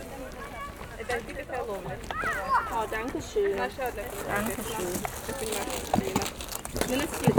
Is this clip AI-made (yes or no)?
no